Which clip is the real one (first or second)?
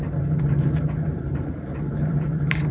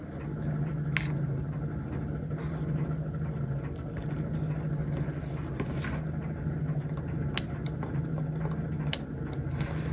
second